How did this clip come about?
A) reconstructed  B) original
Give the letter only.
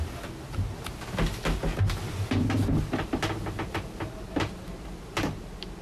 B